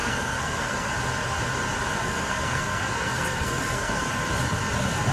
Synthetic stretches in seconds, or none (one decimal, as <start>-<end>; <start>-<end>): 0.0-0.9; 2.0-4.1